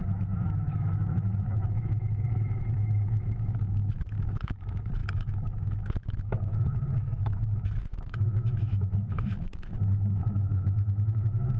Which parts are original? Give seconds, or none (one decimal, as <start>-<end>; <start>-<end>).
none

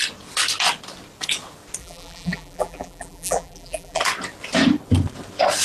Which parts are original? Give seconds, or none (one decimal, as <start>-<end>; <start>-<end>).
0.0-1.8; 4.0-5.6

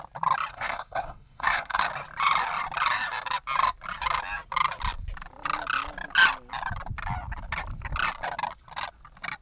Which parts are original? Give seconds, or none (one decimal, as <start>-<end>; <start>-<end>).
0.0-0.5; 1.8-9.4